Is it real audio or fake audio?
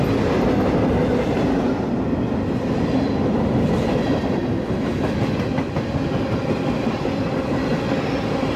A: real